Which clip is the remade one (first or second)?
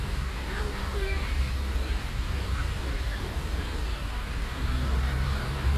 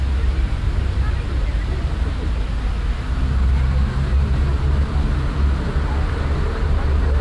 first